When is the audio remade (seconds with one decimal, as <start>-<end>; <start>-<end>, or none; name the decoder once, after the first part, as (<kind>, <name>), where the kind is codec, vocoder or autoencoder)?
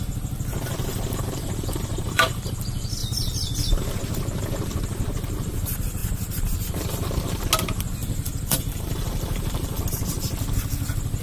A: 0.9-2.5 (vocoder, BigVGAN v2); 3.0-3.7; 8.0-9.8